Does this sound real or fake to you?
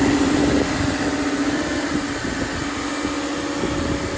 real